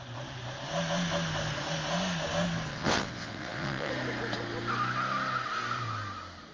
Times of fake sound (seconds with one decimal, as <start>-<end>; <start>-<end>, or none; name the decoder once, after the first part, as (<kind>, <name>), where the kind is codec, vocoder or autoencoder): 2.7-3.9 (vocoder, WaveNeXt)